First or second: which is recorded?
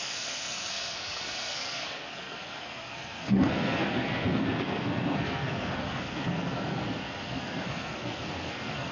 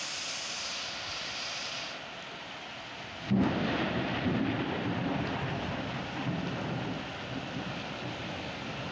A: second